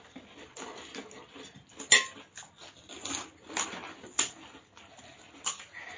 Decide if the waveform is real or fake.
real